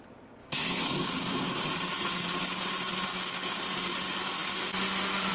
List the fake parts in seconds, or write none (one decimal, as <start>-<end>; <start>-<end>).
0.4-1.6; 3.1-3.6